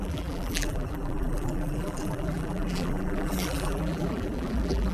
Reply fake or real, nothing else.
fake